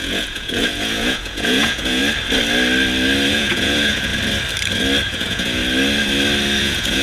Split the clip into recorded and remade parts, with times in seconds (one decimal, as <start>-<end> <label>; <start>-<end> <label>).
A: 0.0-2.0 remade; 2.0-3.3 recorded; 3.3-4.1 remade; 4.1-5.1 recorded; 5.1-5.6 remade; 5.6-6.6 recorded; 6.6-7.0 remade